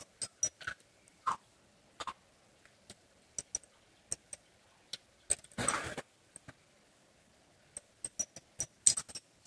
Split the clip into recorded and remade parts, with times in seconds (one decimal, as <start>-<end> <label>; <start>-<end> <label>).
0.0-9.5 recorded